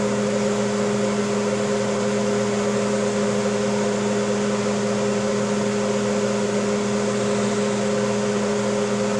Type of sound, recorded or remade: recorded